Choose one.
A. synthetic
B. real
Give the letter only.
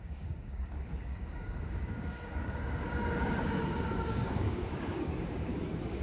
A